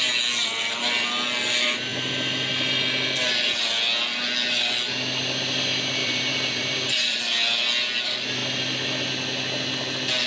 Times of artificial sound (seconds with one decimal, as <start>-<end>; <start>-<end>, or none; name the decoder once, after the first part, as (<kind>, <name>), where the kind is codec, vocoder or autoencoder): 6.0-7.2 (vocoder, BigVGAN v2)